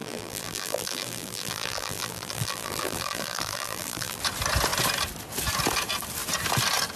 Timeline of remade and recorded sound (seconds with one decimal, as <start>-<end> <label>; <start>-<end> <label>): 0.0-4.2 remade; 4.2-7.0 recorded